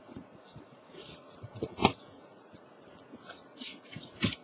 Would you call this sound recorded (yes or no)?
no